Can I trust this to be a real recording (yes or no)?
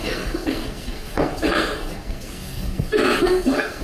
no